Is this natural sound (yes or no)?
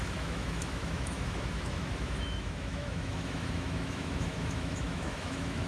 no